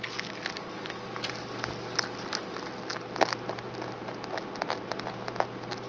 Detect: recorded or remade recorded